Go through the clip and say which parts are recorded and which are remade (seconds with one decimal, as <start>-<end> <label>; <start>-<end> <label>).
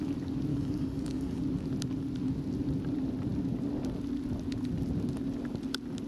0.0-0.5 recorded; 0.5-1.4 remade; 1.4-6.1 recorded